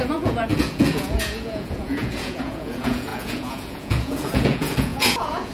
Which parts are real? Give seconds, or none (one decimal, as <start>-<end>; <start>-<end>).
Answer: none